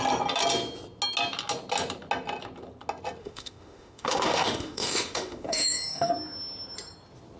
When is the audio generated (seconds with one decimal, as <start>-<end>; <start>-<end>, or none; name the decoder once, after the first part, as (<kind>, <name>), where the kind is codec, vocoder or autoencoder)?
3.2-6.1 (autoencoder, DAC-VAE)